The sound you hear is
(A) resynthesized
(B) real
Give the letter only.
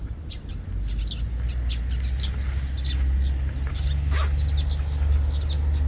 B